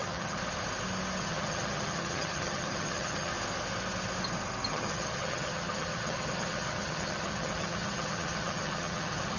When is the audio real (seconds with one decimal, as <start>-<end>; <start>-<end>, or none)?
0.4-1.2; 3.3-4.7